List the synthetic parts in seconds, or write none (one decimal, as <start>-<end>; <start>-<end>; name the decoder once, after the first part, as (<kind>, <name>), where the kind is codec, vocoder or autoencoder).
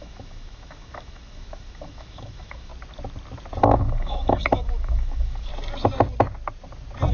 0.0-2.7 (autoencoder, DAC-VAE); 3.6-5.5